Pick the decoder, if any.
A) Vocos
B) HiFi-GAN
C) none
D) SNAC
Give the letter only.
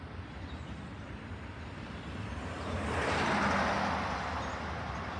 C